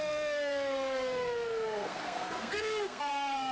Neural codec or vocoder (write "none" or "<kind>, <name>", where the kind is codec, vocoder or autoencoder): codec, SNAC